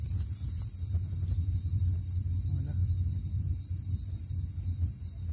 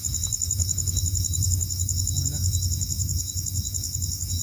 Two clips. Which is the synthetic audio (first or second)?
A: second